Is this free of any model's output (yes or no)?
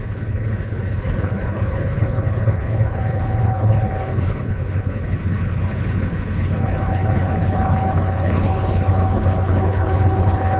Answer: no